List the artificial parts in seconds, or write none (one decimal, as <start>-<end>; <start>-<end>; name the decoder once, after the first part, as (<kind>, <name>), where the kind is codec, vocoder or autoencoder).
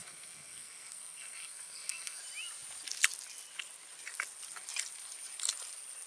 0.0-2.2 (codec, SNAC)